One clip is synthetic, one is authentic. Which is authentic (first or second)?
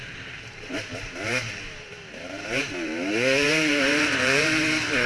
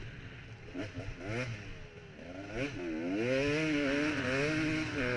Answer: second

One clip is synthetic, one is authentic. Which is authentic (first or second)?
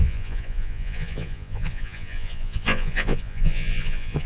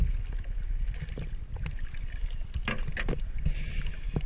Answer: second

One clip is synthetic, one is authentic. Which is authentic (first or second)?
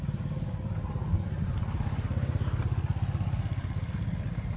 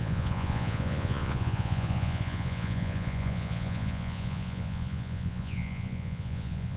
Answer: first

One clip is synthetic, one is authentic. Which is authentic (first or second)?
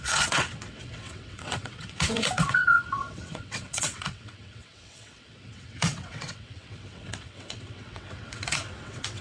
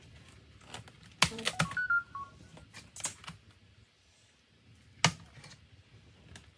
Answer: second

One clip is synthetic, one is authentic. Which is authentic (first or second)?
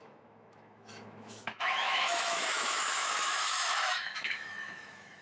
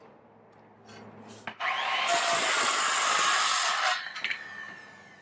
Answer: second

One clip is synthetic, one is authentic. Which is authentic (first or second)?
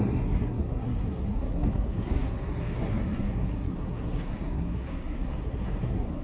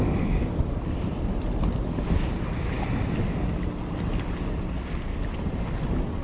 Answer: second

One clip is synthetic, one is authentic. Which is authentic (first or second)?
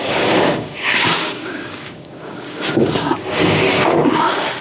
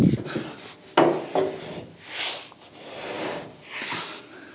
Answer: second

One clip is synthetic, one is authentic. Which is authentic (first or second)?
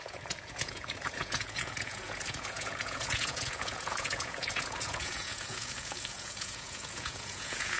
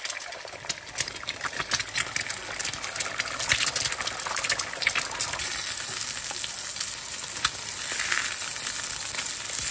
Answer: second